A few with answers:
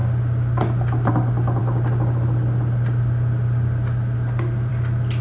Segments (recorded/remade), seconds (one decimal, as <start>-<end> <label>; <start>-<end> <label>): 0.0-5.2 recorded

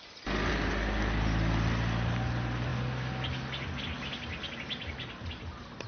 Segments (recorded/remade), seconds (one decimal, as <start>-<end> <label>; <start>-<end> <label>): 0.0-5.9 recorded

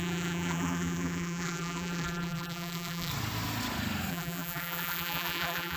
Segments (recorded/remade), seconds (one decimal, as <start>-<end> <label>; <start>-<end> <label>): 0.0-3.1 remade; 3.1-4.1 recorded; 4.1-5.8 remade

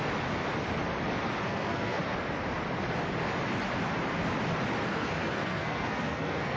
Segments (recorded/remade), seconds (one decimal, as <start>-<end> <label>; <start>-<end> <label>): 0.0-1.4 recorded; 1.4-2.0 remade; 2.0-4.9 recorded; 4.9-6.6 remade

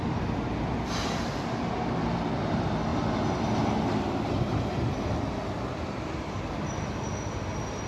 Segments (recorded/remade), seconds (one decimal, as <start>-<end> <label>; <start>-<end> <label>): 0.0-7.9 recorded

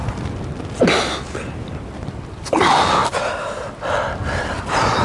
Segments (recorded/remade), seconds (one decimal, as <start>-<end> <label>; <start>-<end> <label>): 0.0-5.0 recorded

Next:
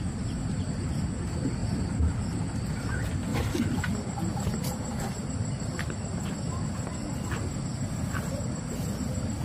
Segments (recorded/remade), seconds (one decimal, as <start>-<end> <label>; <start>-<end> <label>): 0.0-1.6 recorded; 1.6-2.4 remade; 2.4-3.3 recorded; 3.3-7.3 remade; 7.3-9.4 recorded